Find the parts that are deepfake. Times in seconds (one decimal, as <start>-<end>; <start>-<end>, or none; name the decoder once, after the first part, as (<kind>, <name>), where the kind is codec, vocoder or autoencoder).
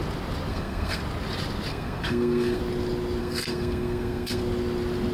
0.5-1.0 (codec, SNAC); 1.7-2.6; 3.2-4.4